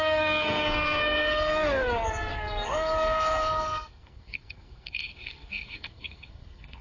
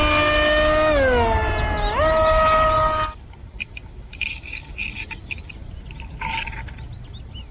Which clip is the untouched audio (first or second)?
second